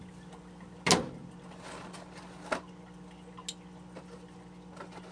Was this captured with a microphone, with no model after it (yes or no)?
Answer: yes